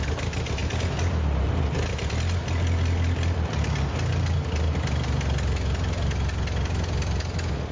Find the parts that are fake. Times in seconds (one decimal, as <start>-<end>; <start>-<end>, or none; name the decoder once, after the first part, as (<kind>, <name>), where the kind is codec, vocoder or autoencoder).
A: none